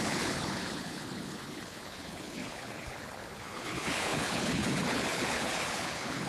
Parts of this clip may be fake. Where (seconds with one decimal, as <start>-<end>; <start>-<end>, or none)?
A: 0.0-6.3